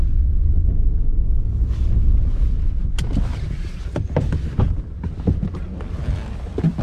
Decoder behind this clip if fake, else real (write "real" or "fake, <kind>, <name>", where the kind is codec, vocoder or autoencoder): real